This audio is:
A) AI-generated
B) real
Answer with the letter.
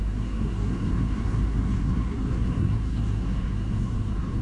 A